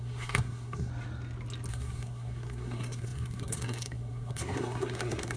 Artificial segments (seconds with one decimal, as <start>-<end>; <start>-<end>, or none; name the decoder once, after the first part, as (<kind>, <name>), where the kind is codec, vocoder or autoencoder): 0.0-0.9 (codec, SNAC); 1.7-5.4